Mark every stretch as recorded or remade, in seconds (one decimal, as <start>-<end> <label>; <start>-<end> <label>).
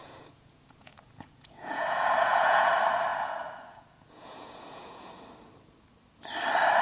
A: 0.0-2.7 remade; 2.7-3.1 recorded; 3.1-5.2 remade; 5.2-6.8 recorded